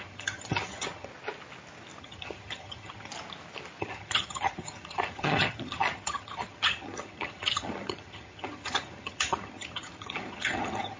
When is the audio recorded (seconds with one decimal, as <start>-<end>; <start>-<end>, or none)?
1.1-2.0; 3.1-3.8